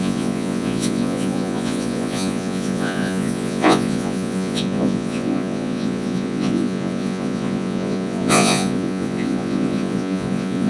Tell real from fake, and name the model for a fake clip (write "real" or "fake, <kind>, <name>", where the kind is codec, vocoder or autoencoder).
fake, vocoder, Vocos